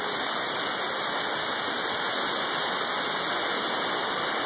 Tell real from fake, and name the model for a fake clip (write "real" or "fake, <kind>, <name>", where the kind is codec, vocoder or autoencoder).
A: real